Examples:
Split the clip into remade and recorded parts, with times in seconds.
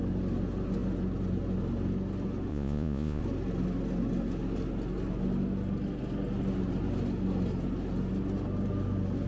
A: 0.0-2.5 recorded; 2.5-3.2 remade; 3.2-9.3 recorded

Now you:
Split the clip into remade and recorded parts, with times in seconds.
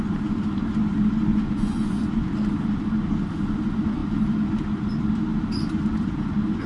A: 0.0-1.3 recorded; 1.3-2.3 remade; 2.3-6.7 recorded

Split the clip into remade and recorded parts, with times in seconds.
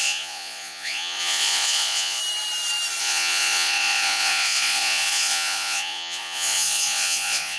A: 0.0-2.2 remade; 2.2-3.0 recorded; 3.0-7.6 remade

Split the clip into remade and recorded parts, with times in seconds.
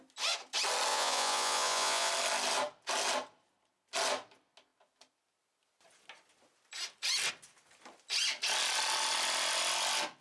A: 0.0-0.9 recorded; 0.9-2.1 remade; 2.1-10.2 recorded